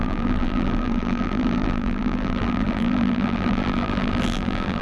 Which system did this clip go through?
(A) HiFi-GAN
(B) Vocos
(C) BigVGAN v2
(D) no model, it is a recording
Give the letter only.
C